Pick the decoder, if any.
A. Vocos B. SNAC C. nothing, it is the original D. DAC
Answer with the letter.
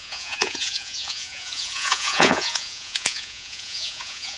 A